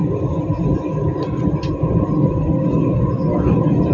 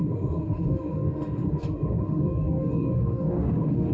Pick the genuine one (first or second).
first